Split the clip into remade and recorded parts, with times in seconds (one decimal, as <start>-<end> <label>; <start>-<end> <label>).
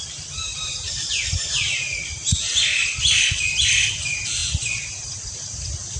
0.0-6.0 recorded